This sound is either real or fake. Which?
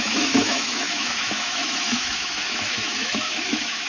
fake